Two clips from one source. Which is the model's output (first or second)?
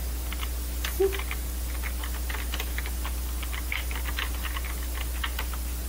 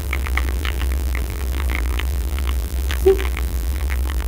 second